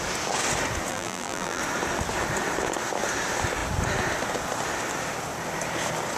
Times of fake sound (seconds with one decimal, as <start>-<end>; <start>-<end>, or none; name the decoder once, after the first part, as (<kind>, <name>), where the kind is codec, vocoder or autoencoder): 0.9-1.6 (vocoder, BigVGAN v2)